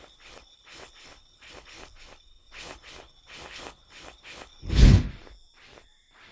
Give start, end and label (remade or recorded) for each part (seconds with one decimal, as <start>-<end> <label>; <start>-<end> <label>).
0.0-5.0 remade; 5.0-6.3 recorded